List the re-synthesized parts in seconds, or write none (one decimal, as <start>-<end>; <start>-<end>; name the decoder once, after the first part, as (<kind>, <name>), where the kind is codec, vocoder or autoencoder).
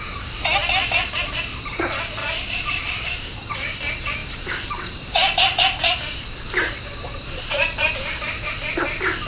2.2-3.5 (vocoder, BigVGAN v2); 4.2-8.5